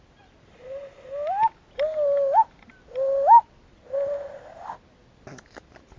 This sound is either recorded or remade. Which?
recorded